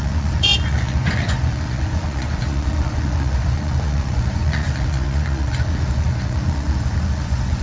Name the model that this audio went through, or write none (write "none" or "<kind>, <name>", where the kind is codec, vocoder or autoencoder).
vocoder, Vocos